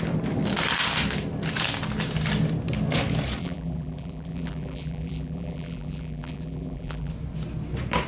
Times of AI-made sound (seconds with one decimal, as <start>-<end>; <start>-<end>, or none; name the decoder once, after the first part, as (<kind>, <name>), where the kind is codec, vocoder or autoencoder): 3.4-7.1 (vocoder, BigVGAN v2)